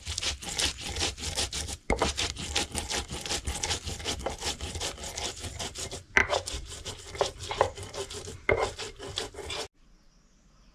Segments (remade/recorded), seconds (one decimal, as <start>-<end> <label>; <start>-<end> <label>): 0.0-0.7 recorded; 0.7-5.6 remade; 5.6-10.7 recorded